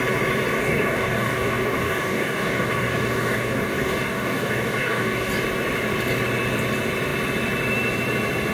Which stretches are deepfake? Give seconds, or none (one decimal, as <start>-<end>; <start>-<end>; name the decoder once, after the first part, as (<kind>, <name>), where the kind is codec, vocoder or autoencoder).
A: 0.6-5.3 (codec, DAC)